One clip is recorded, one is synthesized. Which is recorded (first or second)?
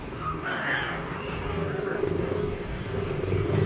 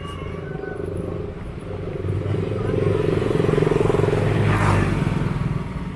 second